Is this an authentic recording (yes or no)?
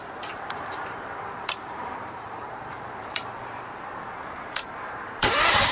no